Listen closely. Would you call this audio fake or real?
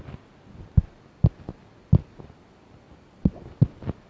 real